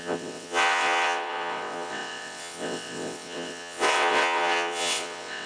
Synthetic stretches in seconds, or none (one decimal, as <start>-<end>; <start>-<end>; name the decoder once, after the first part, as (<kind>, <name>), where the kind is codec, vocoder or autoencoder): 0.0-5.5 (vocoder, WaveNeXt)